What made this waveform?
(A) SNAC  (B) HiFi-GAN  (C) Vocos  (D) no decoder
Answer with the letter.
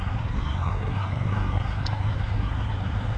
A